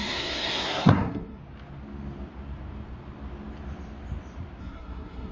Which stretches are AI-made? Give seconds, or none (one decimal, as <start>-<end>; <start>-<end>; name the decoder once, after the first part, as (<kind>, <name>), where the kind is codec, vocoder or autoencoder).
0.0-1.4 (codec, SNAC); 4.6-5.3